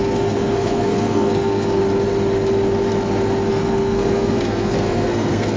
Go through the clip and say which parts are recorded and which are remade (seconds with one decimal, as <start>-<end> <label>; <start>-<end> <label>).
0.0-1.8 remade; 1.8-3.5 recorded; 3.5-5.6 remade